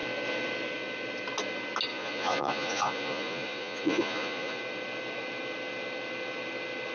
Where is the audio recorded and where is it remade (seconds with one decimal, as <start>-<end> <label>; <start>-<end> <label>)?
0.0-1.9 recorded; 1.9-4.6 remade; 4.6-6.9 recorded